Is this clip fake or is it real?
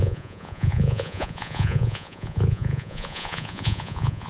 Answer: fake